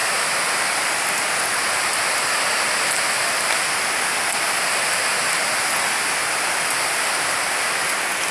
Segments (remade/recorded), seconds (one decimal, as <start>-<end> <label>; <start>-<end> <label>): 0.0-8.3 recorded